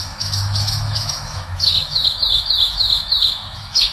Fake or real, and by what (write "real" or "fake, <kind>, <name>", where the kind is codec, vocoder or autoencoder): fake, autoencoder, DAC-VAE